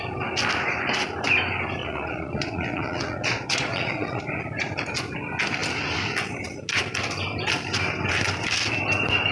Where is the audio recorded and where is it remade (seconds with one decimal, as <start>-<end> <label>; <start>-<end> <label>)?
0.0-1.8 recorded; 1.8-4.2 remade; 4.2-9.3 recorded

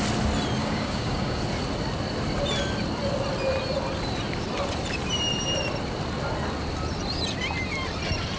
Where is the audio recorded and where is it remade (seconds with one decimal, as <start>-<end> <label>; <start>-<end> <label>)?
0.0-0.6 recorded; 0.6-1.4 remade; 1.4-8.4 recorded

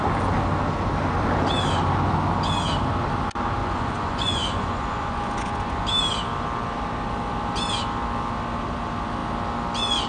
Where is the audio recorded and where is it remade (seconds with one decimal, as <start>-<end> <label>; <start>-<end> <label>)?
0.0-3.6 recorded; 3.6-5.8 remade; 5.8-10.1 recorded

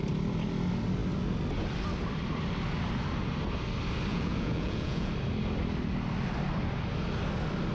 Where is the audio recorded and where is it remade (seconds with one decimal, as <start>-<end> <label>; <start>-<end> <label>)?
0.0-4.1 recorded; 4.1-5.1 remade; 5.1-7.7 recorded

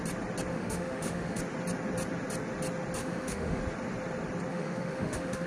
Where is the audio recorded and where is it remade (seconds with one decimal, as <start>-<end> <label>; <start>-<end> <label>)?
0.0-0.5 recorded; 0.5-1.4 remade; 1.4-3.0 recorded; 3.0-3.6 remade; 3.6-4.5 recorded; 4.5-5.5 remade